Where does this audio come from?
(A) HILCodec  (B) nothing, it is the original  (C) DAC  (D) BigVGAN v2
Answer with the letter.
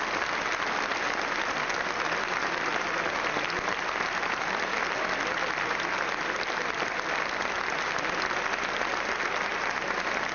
B